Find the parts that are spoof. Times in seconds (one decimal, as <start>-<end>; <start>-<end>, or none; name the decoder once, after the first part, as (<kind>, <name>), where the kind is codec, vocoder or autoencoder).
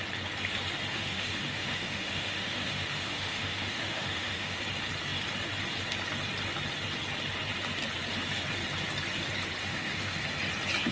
0.9-4.6 (autoencoder, DAC-VAE); 9.6-10.2